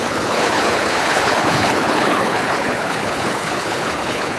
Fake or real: fake